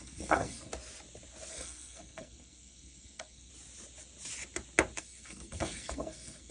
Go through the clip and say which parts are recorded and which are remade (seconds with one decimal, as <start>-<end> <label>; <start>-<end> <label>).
0.0-0.7 remade; 0.7-1.5 recorded; 1.5-3.5 remade; 3.5-5.0 recorded; 5.0-6.5 remade